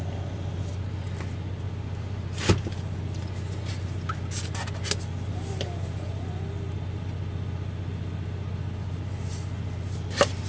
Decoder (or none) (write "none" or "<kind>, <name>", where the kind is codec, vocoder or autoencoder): none